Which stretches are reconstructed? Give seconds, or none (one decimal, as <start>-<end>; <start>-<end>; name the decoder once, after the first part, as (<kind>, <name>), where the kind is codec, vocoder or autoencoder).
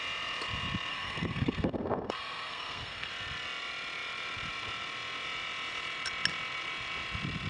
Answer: 0.9-3.1 (codec, SNAC)